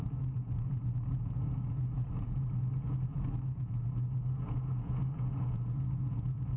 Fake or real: fake